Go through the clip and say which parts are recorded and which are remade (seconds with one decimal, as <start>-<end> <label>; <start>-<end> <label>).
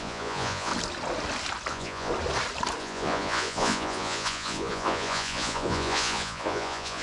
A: 0.0-0.7 remade; 0.7-1.7 recorded; 1.7-2.1 remade; 2.1-2.8 recorded; 2.8-7.0 remade